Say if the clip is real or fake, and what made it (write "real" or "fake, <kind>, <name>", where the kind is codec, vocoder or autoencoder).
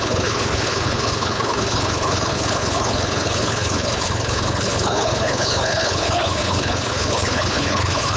fake, codec, HILCodec